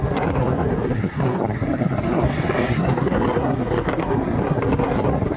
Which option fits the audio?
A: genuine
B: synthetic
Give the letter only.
B